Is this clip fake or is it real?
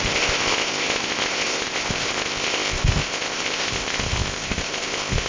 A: fake